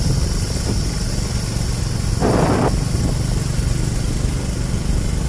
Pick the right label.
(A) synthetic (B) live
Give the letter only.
B